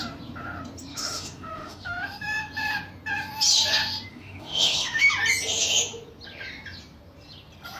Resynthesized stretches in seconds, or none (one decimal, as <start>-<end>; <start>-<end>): 0.9-2.5; 4.1-5.1